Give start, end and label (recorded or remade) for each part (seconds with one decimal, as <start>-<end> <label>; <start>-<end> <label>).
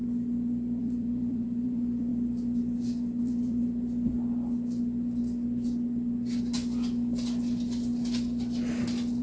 0.0-0.8 recorded; 0.8-2.1 remade; 2.1-3.2 recorded; 3.2-4.1 remade; 4.1-9.2 recorded